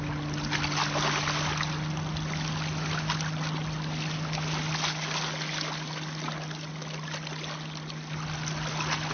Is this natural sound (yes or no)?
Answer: yes